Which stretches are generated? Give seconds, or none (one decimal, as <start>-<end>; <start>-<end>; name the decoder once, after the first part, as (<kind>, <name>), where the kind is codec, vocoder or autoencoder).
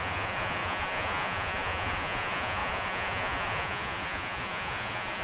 0.0-5.2 (vocoder, Vocos)